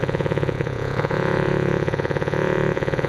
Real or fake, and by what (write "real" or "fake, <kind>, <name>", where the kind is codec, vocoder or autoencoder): fake, vocoder, Vocos